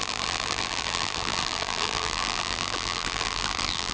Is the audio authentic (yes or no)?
no